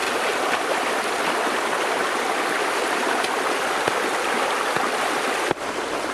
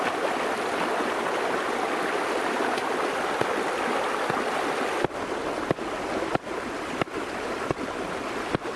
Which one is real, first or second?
second